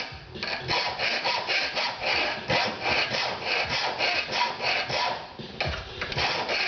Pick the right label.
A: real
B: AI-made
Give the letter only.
A